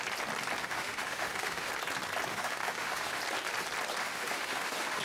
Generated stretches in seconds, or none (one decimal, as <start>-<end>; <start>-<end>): 0.6-1.7; 2.3-3.2; 4.0-5.0